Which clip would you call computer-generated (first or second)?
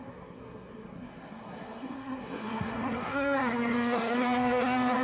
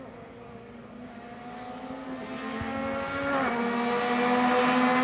first